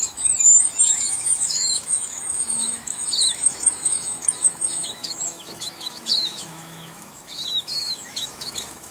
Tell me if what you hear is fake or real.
fake